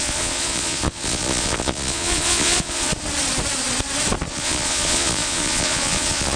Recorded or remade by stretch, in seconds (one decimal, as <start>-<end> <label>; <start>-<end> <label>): 0.0-2.9 remade; 2.9-4.3 recorded; 4.3-6.4 remade